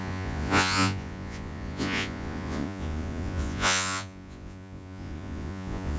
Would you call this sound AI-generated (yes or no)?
yes